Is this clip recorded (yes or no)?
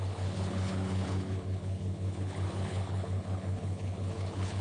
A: no